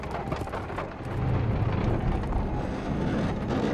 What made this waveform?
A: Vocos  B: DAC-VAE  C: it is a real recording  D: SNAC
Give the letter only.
C